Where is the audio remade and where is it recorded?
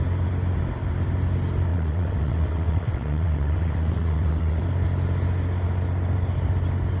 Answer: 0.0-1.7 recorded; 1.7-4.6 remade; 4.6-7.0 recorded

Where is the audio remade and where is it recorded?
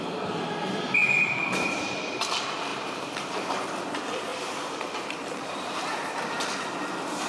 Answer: 0.0-1.0 recorded; 1.0-2.3 remade; 2.3-2.7 recorded; 2.7-3.6 remade; 3.6-4.3 recorded; 4.3-6.5 remade; 6.5-7.3 recorded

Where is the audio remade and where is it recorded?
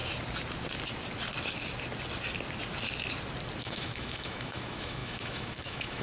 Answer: 0.0-3.6 recorded; 3.6-6.0 remade